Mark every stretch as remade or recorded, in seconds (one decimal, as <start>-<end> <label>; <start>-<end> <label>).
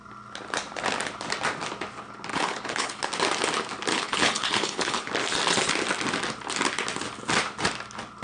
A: 0.0-2.3 recorded; 2.3-3.0 remade; 3.0-3.9 recorded; 3.9-5.1 remade; 5.1-8.2 recorded